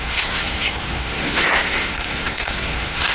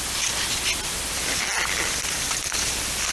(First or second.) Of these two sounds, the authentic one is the second